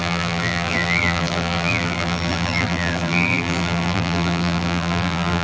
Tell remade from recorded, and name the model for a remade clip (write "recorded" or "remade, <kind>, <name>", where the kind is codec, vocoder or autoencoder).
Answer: remade, vocoder, BigVGAN v2